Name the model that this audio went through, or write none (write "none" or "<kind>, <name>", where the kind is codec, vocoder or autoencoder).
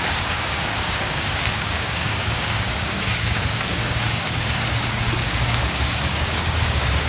codec, DAC